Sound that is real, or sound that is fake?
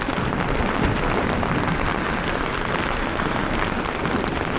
real